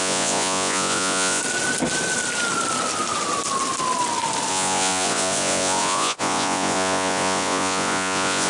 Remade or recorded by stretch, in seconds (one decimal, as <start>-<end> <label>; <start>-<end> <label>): 0.0-1.4 remade; 1.4-4.5 recorded; 4.5-8.5 remade